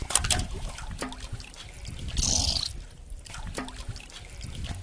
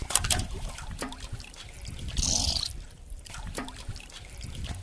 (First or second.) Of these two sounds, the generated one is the second